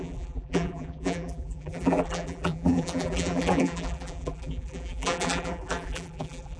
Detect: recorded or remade remade